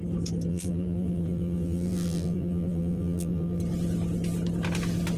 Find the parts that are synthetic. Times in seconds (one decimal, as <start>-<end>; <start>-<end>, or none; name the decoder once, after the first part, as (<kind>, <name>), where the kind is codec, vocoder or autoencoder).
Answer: 0.5-3.6 (vocoder, BigVGAN v2)